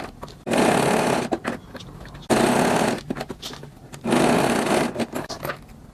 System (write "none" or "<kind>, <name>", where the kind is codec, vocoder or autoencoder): none